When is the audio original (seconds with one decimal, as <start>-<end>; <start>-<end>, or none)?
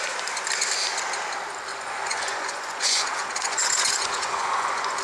0.0-1.7